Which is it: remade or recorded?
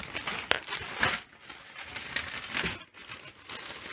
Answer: recorded